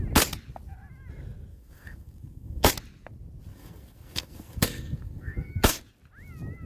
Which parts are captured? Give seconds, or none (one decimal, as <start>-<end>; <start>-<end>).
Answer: 0.0-1.5; 2.7-3.5; 5.8-6.7